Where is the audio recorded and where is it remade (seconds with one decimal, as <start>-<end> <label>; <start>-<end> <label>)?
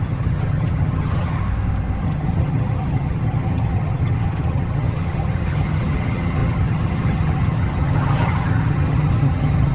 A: 0.0-1.4 remade; 1.4-2.0 recorded; 2.0-9.7 remade